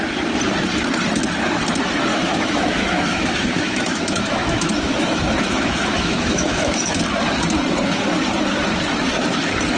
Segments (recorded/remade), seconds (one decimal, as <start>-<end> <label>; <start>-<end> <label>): 0.0-2.1 recorded; 2.1-7.0 remade; 7.0-9.8 recorded